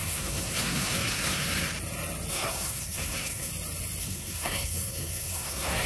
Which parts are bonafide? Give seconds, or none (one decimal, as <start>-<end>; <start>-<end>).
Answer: 1.7-2.3; 3.5-4.0